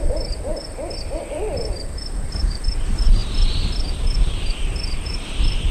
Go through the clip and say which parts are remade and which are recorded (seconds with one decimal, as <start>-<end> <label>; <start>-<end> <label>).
0.0-0.5 remade; 0.5-1.2 recorded; 1.2-3.2 remade; 3.2-4.4 recorded; 4.4-5.7 remade